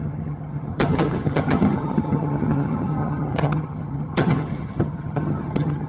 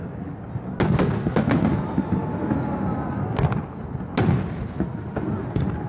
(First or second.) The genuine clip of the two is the second